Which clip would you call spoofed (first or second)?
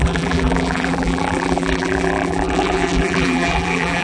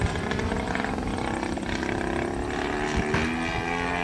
first